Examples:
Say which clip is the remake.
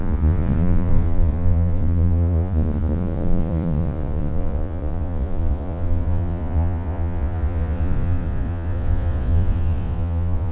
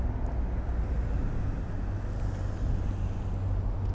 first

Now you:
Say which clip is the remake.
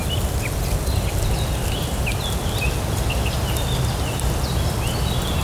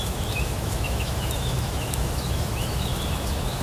second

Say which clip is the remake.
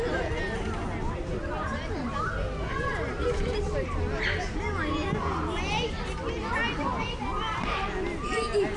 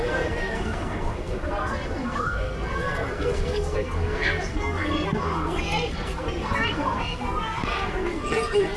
second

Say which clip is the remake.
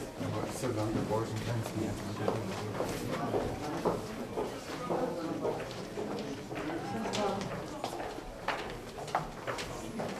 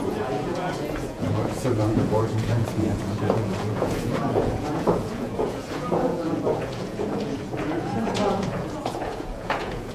second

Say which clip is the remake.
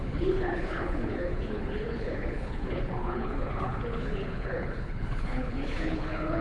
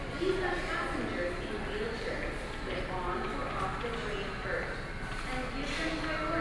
first